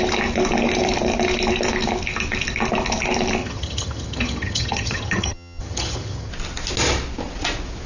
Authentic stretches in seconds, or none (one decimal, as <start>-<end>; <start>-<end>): 0.0-3.4; 6.3-7.9